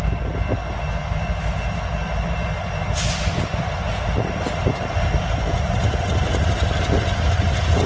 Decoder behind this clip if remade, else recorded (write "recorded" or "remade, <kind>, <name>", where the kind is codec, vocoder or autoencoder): recorded